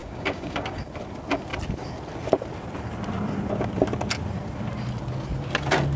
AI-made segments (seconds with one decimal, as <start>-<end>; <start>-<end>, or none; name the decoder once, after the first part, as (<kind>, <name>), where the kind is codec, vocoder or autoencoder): 0.0-0.8 (codec, DAC)